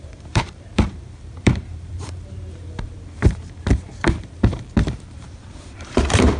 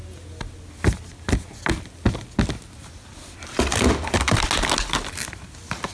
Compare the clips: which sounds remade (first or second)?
first